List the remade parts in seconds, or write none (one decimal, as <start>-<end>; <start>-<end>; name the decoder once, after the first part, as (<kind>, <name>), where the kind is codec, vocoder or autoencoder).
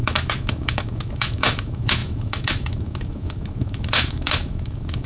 0.0-5.1 (autoencoder, DAC-VAE)